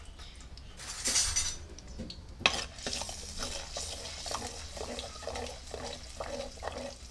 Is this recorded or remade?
recorded